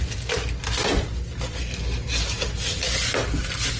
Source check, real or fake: real